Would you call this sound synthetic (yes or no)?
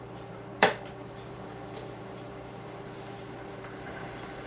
yes